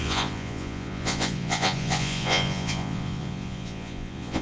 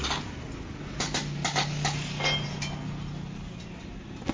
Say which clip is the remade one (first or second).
first